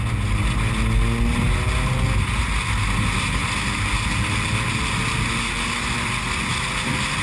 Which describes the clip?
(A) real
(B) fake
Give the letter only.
A